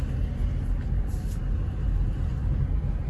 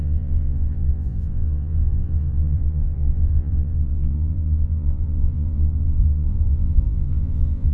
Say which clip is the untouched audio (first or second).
first